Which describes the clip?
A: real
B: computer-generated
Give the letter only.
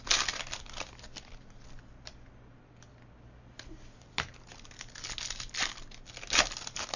A